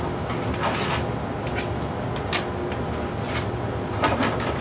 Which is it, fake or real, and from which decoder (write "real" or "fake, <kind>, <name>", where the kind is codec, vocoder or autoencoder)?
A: real